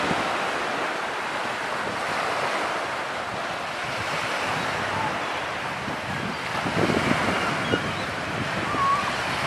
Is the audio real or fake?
real